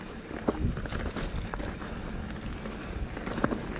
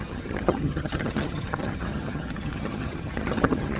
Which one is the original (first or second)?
first